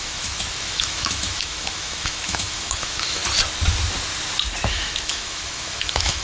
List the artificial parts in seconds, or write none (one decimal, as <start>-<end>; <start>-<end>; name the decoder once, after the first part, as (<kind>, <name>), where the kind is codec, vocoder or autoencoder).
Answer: 0.0-3.2 (autoencoder, DAC-VAE); 4.7-6.2